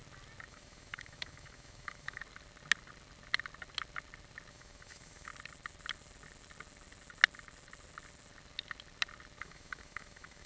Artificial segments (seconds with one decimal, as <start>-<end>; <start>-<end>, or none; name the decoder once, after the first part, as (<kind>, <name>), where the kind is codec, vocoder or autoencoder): 0.5-2.2 (autoencoder, DAC-VAE); 4.5-5.3; 9.4-10.5

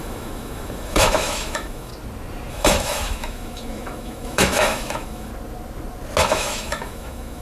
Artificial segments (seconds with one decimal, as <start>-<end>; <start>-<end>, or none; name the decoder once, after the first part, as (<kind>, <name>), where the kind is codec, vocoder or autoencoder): 0.0-1.9 (autoencoder, DAC-VAE); 2.5-5.3; 6.2-7.4

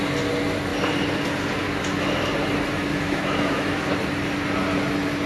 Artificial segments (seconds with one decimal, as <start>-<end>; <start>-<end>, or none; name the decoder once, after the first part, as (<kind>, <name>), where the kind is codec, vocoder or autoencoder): 2.9-3.9 (autoencoder, DAC-VAE)

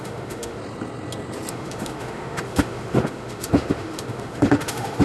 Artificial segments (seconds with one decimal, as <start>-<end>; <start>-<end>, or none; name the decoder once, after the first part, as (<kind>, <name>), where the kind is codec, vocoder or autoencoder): 0.0-0.6 (autoencoder, DAC-VAE); 1.5-5.0

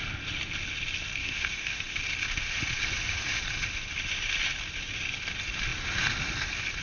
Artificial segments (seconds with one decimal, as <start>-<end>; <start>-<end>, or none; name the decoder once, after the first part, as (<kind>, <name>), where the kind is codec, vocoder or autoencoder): 1.2-2.0 (autoencoder, DAC-VAE)

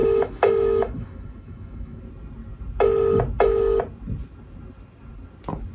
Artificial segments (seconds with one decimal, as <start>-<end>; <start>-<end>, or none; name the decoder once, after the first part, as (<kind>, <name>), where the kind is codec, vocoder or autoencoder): 0.0-2.0 (autoencoder, DAC-VAE)

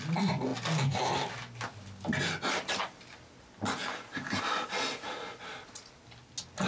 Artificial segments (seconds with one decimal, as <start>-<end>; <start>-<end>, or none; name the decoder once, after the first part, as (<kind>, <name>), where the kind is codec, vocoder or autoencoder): none